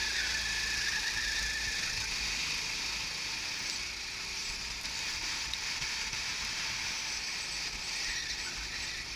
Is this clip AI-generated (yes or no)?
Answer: no